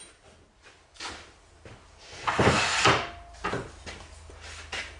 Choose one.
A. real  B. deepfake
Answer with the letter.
A